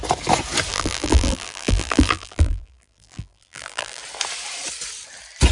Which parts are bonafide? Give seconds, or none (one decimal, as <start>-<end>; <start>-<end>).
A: 0.0-0.7; 4.0-5.5